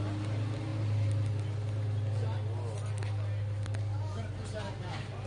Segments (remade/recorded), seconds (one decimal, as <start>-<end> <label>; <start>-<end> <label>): 0.0-5.3 recorded